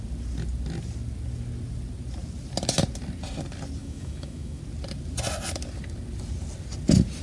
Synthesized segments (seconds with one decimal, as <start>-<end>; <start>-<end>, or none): 3.8-4.6